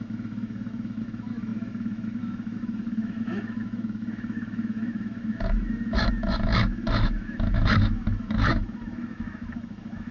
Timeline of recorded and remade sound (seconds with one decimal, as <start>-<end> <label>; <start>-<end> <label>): 0.0-10.1 remade

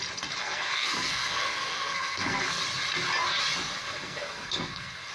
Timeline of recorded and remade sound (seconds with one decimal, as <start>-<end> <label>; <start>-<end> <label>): 0.0-0.4 recorded; 0.4-2.6 remade; 2.6-3.8 recorded; 3.8-5.1 remade

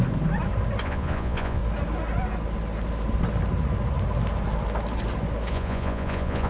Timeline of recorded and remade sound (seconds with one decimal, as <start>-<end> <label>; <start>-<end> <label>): 0.0-0.8 recorded; 0.8-1.6 remade; 1.6-5.5 recorded; 5.5-6.5 remade

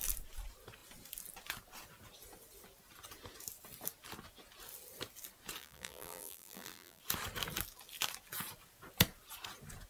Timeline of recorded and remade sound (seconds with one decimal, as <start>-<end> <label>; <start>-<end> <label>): 0.0-5.6 recorded; 5.6-7.0 remade; 7.0-9.9 recorded